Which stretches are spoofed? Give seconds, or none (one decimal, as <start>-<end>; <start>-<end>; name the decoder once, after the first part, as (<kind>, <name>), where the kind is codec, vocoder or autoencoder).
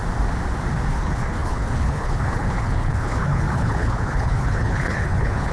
0.9-5.5 (codec, HILCodec)